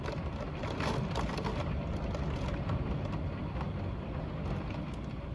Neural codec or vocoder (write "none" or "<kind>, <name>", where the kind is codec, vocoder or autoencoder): none